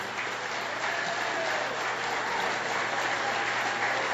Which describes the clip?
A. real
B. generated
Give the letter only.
A